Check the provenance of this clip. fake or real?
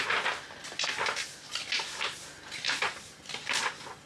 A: real